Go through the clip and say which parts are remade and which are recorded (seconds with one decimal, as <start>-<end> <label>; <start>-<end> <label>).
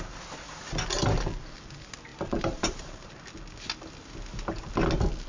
0.0-2.1 recorded; 2.1-3.1 remade; 3.1-5.3 recorded